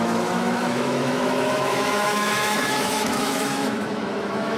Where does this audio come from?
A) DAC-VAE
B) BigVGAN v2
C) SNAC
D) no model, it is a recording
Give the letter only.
A